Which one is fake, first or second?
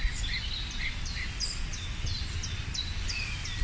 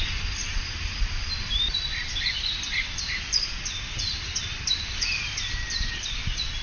second